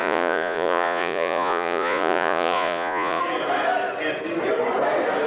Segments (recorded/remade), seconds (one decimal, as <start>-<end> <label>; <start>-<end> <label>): 0.0-3.2 remade; 3.2-5.3 recorded